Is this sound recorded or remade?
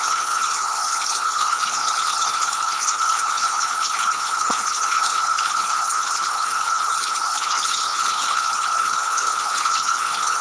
remade